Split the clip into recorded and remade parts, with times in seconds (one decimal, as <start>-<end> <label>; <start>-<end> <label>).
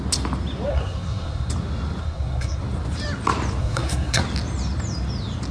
0.0-0.7 recorded; 0.7-1.5 remade; 1.5-2.0 recorded; 2.0-2.6 remade; 2.6-3.6 recorded; 3.6-4.2 remade; 4.2-5.5 recorded